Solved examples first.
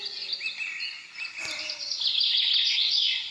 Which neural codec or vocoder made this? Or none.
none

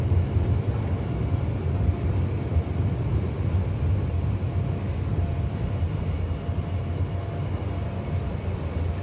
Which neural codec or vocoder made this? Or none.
vocoder, BigVGAN v2